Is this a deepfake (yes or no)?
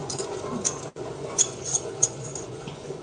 yes